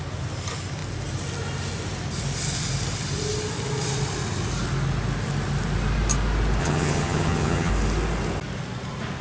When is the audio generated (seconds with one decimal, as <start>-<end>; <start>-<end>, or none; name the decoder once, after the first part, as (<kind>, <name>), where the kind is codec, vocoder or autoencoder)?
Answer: 6.6-7.7 (vocoder, HiFi-GAN)